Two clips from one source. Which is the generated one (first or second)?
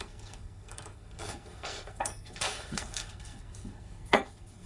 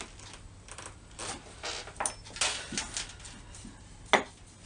first